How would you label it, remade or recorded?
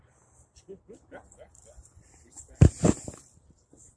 remade